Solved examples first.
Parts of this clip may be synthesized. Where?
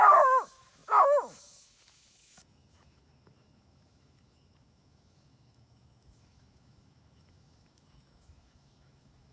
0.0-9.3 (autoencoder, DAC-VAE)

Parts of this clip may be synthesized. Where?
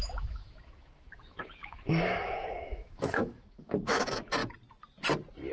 0.0-4.4 (autoencoder, DAC-VAE)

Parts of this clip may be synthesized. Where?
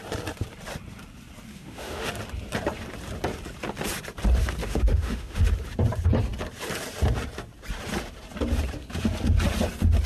1.5-2.1 (autoencoder, DAC-VAE); 4.6-5.4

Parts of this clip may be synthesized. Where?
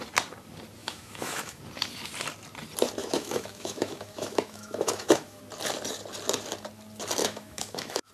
0.8-1.6 (autoencoder, DAC-VAE); 3.0-5.4; 7.2-8.1